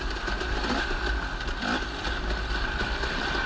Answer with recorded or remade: recorded